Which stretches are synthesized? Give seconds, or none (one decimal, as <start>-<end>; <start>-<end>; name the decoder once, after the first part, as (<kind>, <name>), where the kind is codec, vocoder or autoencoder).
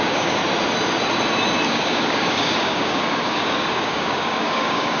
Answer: 0.0-0.4 (codec, DAC); 1.7-5.0